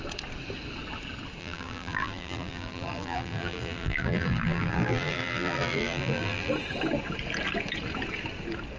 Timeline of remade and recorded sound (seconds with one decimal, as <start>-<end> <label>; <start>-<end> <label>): 0.0-1.4 recorded; 1.4-6.5 remade; 6.5-8.8 recorded